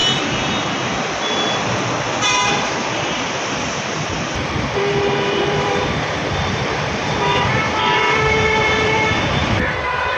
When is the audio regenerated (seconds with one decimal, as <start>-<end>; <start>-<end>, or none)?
2.5-10.2